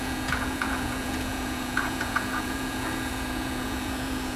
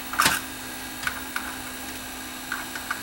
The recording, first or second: second